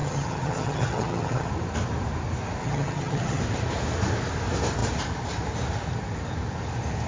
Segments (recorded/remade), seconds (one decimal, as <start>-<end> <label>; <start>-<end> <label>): 0.0-1.5 remade; 1.5-2.6 recorded; 2.6-3.4 remade; 3.4-7.1 recorded

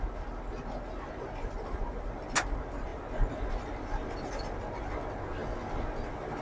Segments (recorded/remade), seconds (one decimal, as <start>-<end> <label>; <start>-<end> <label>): 0.0-6.4 recorded

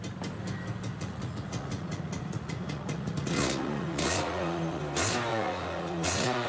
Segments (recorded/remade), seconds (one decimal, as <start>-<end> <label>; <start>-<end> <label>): 0.0-0.9 recorded; 0.9-4.8 remade; 4.8-5.3 recorded; 5.3-6.5 remade

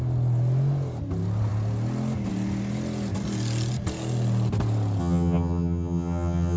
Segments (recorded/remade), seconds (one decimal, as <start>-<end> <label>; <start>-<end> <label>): 0.0-5.0 recorded; 5.0-6.6 remade

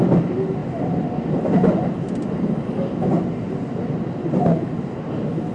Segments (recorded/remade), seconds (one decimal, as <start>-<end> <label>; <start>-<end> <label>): 0.0-5.5 recorded

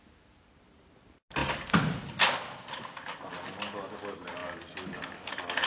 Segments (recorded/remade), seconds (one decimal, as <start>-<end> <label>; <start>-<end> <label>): 0.0-5.7 recorded